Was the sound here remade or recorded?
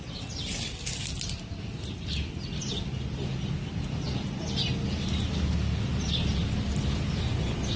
recorded